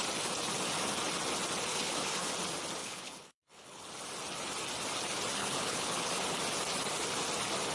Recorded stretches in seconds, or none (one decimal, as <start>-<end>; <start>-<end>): 0.0-1.7; 2.3-2.8; 3.9-5.4; 6.1-7.7